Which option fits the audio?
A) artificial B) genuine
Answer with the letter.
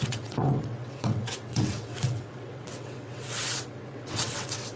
A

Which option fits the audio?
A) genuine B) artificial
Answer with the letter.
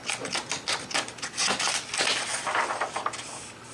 A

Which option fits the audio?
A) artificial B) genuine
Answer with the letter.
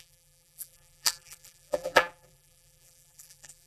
A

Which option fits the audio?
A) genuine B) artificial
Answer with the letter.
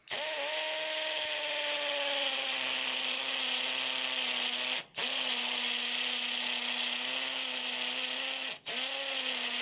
A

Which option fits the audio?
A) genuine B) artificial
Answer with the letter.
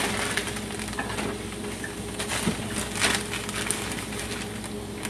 A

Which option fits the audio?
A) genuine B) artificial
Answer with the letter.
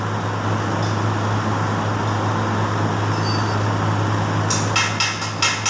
A